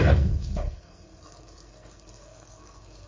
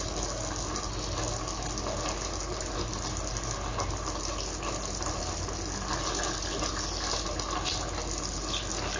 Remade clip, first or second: first